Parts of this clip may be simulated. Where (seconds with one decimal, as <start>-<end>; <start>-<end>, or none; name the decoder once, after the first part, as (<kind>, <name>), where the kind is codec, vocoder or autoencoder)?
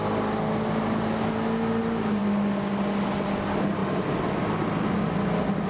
none